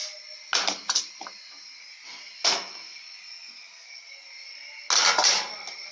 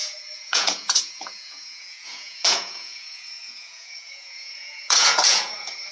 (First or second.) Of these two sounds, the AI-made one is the second